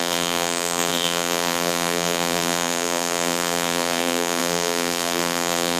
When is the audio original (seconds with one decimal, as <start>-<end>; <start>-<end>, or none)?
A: none